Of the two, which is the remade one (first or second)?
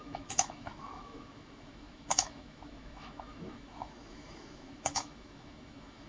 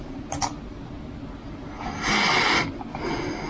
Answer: first